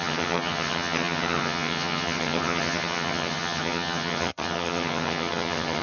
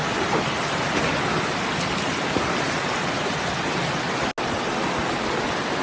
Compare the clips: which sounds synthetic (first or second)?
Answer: first